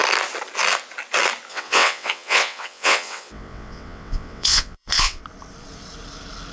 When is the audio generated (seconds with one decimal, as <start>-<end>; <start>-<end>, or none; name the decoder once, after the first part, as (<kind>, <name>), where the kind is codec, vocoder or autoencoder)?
1.5-5.2 (vocoder, WaveNeXt)